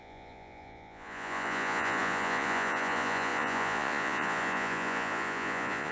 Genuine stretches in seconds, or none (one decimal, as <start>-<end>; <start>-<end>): none